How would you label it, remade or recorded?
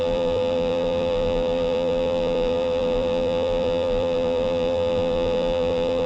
remade